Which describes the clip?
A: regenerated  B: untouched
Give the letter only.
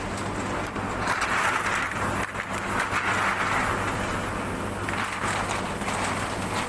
B